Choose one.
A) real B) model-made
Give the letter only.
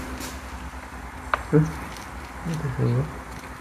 A